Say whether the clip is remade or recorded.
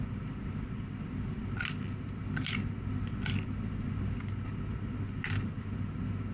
recorded